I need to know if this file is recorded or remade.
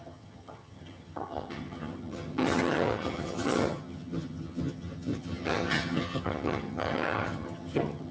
remade